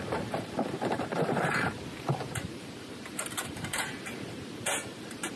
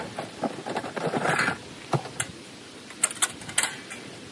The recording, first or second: second